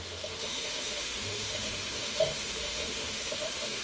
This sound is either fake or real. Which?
fake